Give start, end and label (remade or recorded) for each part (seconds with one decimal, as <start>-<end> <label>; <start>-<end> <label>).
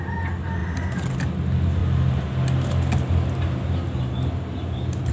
0.0-5.1 recorded